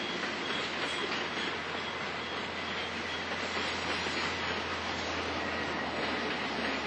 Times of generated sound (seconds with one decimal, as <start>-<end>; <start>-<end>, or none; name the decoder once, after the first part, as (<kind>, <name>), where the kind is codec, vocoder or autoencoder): none